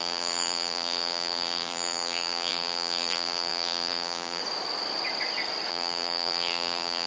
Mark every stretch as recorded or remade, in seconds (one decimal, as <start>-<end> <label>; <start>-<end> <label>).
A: 0.0-4.4 remade; 4.4-5.7 recorded; 5.7-7.1 remade

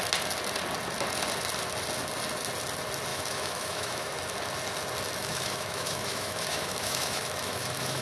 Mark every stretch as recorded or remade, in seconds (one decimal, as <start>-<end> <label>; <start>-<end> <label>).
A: 0.0-3.1 recorded; 3.1-4.1 remade; 4.1-5.2 recorded; 5.2-8.0 remade

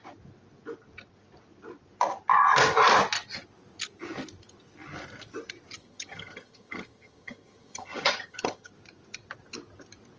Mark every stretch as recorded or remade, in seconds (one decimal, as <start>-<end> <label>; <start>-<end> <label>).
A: 0.0-5.8 recorded; 5.8-8.7 remade; 8.7-10.2 recorded

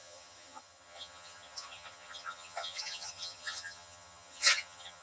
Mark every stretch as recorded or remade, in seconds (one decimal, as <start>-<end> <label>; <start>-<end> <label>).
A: 0.0-5.0 remade

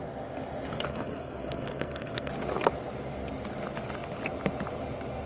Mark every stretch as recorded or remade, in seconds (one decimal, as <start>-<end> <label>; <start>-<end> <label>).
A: 0.0-0.9 recorded; 0.9-2.3 remade; 2.3-5.3 recorded

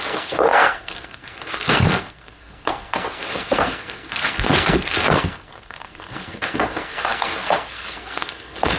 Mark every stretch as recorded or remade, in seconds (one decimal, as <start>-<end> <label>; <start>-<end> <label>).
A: 0.0-8.8 remade